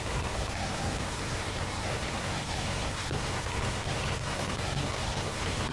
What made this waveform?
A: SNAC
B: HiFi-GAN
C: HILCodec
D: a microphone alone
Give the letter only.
A